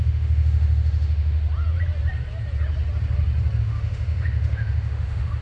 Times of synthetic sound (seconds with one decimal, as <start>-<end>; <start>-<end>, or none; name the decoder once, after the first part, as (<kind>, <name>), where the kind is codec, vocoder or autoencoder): 0.0-1.4 (autoencoder, DAC-VAE); 3.6-5.4